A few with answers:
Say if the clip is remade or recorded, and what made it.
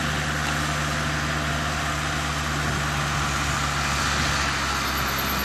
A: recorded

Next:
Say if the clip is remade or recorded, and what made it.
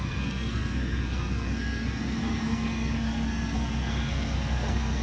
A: remade, codec, SNAC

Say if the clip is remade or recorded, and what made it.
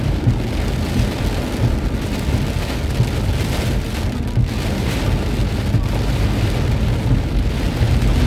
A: recorded